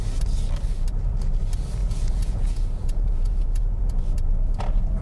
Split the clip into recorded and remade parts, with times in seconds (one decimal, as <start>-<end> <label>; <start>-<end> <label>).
0.0-1.8 recorded; 1.8-4.0 remade; 4.0-5.0 recorded